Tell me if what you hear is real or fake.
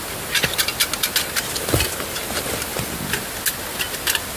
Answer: real